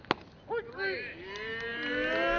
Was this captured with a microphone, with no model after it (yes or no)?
yes